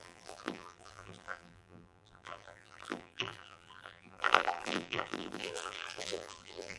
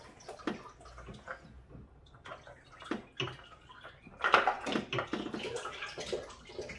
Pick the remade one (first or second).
first